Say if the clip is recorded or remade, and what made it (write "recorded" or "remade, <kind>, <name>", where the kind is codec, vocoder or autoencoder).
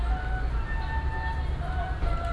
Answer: recorded